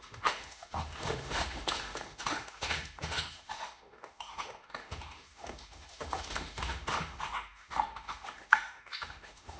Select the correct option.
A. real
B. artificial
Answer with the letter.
B